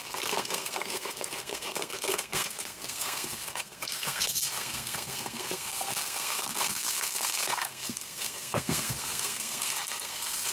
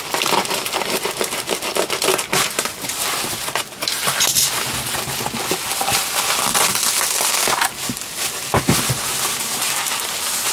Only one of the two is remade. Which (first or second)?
first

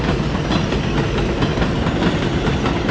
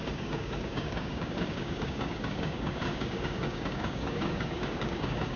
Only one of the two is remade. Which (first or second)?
second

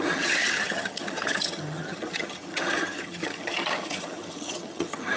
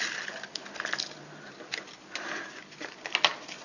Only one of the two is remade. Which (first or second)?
first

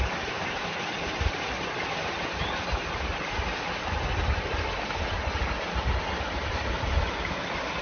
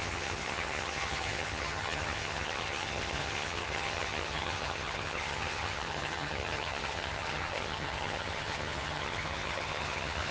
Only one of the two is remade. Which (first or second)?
second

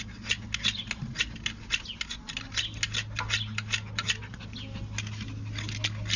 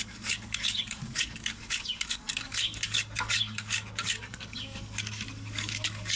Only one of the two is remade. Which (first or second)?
second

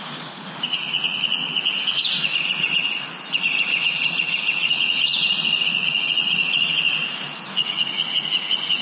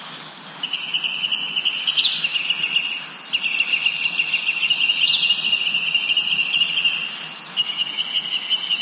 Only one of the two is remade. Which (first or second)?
first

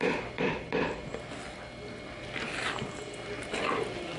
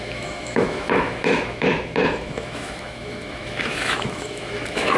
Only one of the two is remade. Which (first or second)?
second